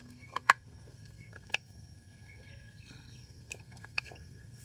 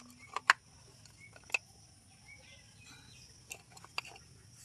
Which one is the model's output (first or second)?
first